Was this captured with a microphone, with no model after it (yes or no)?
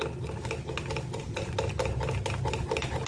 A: yes